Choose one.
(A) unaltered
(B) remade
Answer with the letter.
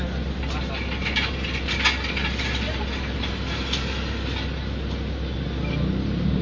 A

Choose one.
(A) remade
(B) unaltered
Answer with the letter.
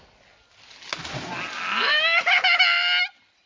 B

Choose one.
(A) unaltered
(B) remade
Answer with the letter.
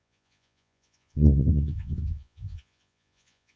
B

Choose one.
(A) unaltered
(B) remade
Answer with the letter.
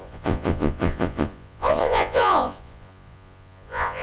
B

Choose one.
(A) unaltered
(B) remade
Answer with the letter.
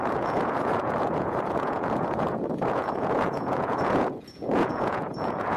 B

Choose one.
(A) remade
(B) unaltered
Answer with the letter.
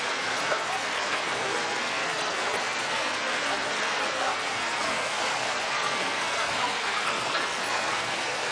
A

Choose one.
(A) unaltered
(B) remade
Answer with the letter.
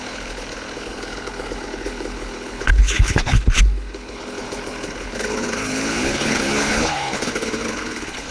B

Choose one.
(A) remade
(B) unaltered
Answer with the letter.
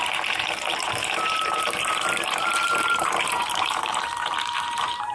A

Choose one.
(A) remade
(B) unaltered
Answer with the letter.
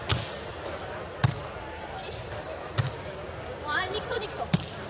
B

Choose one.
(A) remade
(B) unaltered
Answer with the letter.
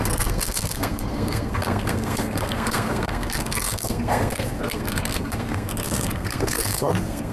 A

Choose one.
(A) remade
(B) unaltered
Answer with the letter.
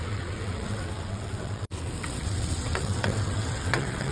A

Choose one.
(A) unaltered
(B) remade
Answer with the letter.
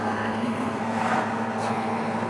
B